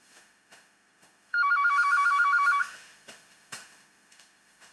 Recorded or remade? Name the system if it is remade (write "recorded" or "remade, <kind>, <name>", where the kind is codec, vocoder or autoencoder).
remade, autoencoder, DAC-VAE